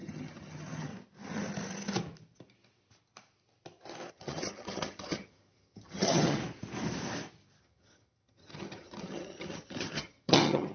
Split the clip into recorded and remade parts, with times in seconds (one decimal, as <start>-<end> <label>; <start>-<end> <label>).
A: 0.0-0.9 remade; 0.9-4.1 recorded; 4.1-6.4 remade; 6.4-7.6 recorded; 7.6-10.7 remade